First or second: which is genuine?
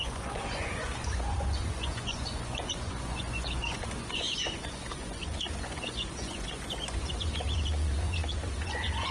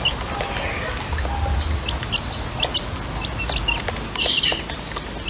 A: second